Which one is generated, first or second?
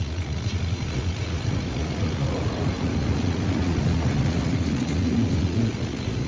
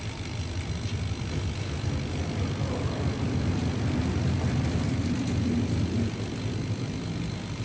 first